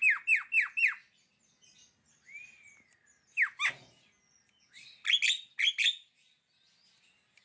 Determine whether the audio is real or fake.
real